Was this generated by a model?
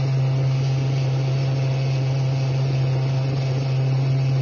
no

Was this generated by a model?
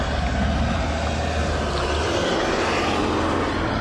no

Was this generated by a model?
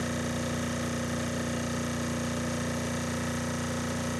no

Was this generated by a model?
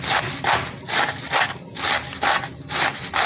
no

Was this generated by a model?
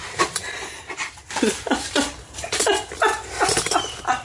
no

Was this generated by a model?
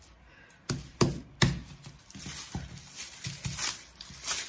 no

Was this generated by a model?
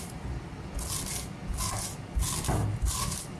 no